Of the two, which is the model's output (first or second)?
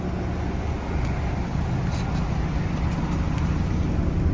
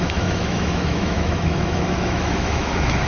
second